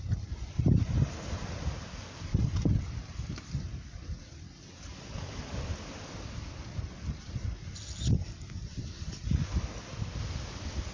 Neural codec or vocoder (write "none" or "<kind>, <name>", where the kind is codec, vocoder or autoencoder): none